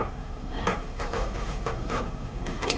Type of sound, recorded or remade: remade